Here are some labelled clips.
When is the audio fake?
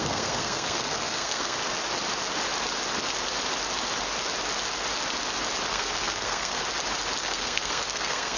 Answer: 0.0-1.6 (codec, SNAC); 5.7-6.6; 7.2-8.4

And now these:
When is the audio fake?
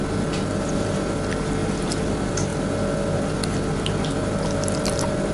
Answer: 1.6-2.1 (vocoder, BigVGAN v2)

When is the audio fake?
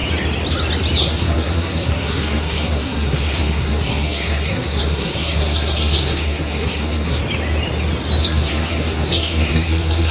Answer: 1.0-7.2 (codec, SNAC); 8.2-10.1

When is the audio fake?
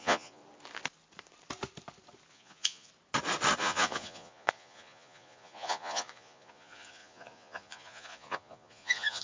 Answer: 0.0-0.4 (vocoder, Vocos); 2.3-2.9; 3.6-9.2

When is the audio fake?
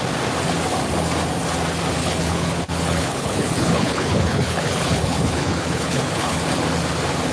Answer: 2.0-6.4 (codec, HILCodec)